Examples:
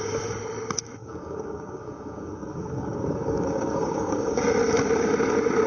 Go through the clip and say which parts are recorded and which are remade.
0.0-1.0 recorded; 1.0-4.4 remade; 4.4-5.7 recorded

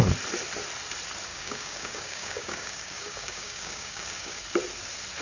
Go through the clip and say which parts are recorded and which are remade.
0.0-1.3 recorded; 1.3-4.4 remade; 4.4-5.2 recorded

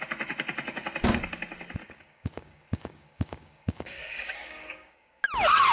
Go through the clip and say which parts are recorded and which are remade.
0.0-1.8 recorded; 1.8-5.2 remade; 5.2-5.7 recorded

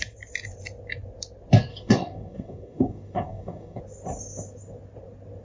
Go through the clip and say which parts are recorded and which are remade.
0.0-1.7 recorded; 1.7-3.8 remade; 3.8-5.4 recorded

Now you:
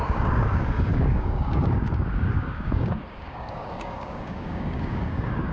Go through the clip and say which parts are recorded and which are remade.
0.0-5.5 remade

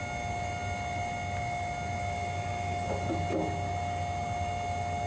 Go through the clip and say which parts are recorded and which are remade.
0.0-5.1 recorded

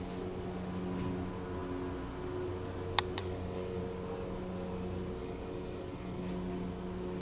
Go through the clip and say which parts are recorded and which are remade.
0.0-3.2 recorded; 3.2-3.8 remade; 3.8-5.2 recorded; 5.2-6.3 remade; 6.3-7.2 recorded